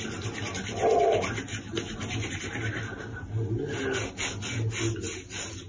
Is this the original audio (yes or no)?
yes